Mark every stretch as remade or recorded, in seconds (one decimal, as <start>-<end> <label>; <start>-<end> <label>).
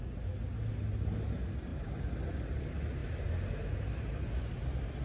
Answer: 0.0-5.0 recorded